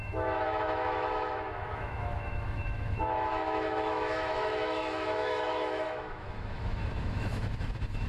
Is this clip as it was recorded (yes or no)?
no